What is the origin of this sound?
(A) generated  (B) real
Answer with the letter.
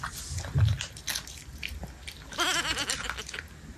B